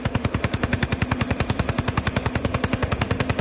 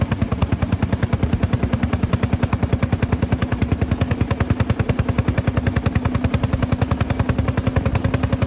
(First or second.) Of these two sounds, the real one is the second